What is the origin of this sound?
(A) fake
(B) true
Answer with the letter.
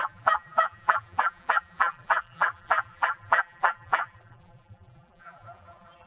A